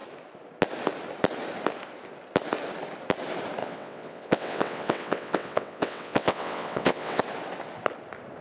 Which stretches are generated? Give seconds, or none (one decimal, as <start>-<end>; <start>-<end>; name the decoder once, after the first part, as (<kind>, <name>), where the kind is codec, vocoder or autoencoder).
3.6-7.2 (vocoder, WaveNeXt)